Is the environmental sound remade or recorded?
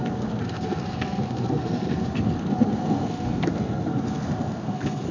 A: remade